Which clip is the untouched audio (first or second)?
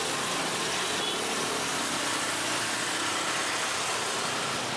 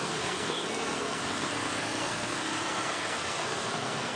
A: first